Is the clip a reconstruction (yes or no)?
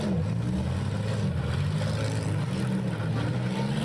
no